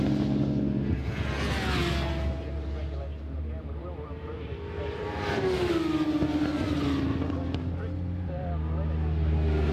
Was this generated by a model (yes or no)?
no